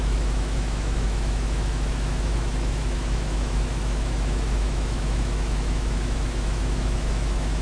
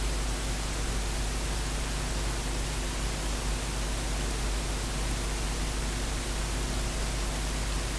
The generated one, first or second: first